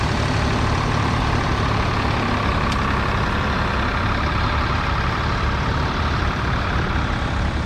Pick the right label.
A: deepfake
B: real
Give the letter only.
A